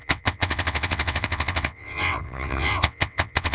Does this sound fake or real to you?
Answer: fake